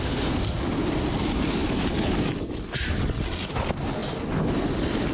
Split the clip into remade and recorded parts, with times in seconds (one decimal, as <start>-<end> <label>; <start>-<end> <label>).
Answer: 0.0-5.1 recorded

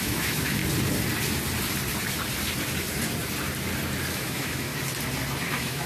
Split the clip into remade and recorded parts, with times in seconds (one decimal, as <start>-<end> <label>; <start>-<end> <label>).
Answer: 0.0-0.6 remade; 0.6-4.1 recorded; 4.1-4.7 remade; 4.7-5.4 recorded; 5.4-5.9 remade